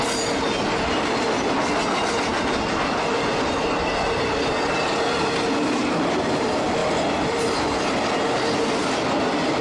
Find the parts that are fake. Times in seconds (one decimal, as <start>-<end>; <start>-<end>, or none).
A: none